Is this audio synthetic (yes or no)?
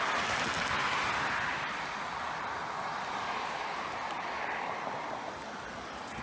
no